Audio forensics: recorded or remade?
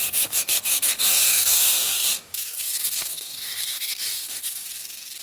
remade